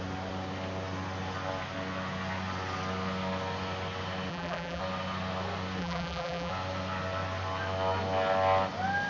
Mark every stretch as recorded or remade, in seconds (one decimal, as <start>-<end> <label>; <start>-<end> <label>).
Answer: 0.0-4.3 recorded; 4.3-4.8 remade; 4.8-5.8 recorded; 5.8-6.5 remade; 6.5-9.1 recorded